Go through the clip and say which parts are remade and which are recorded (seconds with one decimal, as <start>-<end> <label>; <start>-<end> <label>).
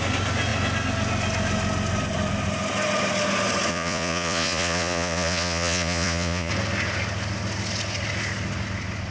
0.0-3.7 recorded; 3.7-6.5 remade; 6.5-9.1 recorded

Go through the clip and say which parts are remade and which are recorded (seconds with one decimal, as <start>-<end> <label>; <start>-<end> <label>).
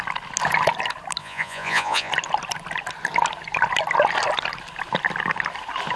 0.0-1.2 recorded; 1.2-2.1 remade; 2.1-6.0 recorded